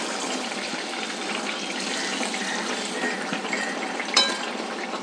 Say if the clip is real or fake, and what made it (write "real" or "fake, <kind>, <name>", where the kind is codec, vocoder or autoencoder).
fake, vocoder, BigVGAN v2